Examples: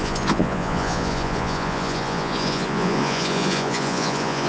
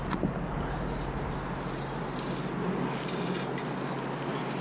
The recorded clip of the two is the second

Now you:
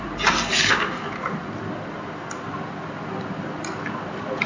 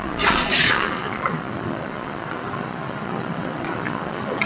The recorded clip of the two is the first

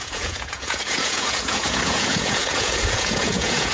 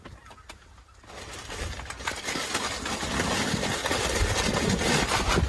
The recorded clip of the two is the second